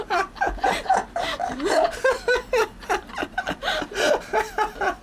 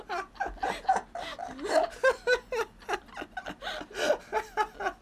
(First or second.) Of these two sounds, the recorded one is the second